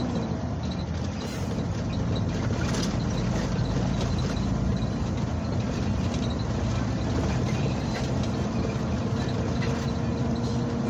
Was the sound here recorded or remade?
recorded